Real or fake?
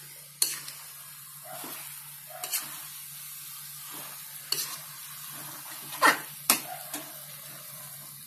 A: real